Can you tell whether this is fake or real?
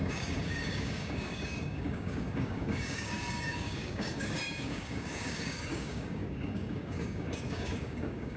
fake